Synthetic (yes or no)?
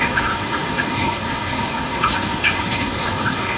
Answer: yes